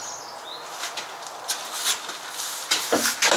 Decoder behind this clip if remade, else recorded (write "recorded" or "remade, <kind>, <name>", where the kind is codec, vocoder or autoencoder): recorded